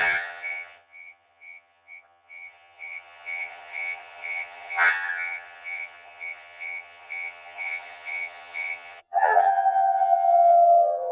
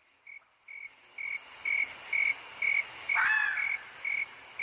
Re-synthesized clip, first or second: first